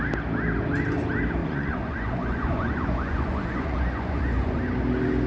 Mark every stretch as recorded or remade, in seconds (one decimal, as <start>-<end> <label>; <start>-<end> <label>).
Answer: 0.0-1.4 recorded; 1.4-4.6 remade; 4.6-5.3 recorded